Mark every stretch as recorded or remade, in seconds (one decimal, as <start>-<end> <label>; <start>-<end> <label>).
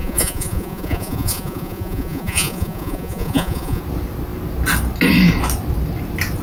0.0-3.8 remade; 3.8-6.4 recorded